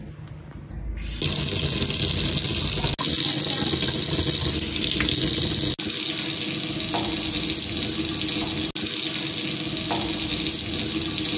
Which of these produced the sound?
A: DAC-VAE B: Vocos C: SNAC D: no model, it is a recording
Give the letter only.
D